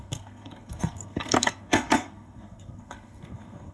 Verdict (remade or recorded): remade